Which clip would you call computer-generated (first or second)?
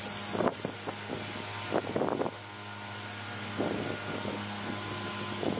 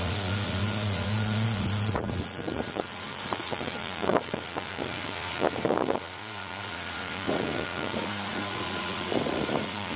second